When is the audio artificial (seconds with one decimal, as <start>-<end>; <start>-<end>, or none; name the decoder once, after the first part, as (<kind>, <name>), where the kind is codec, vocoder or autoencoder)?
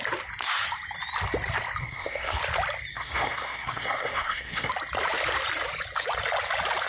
1.8-2.4 (codec, SNAC); 2.9-4.7